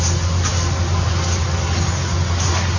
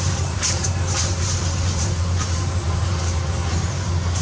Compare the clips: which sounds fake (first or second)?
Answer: second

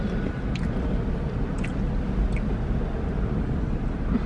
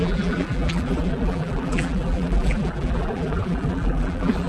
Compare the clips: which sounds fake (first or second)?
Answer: second